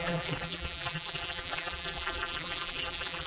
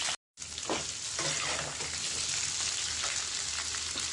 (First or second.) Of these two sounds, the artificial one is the first